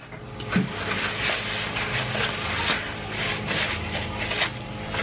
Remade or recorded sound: recorded